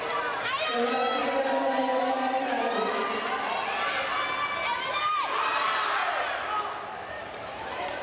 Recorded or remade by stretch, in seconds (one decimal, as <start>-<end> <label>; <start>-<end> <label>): 0.0-1.2 remade; 1.2-2.2 recorded; 2.2-3.0 remade; 3.0-4.9 recorded; 4.9-6.0 remade; 6.0-7.2 recorded; 7.2-8.0 remade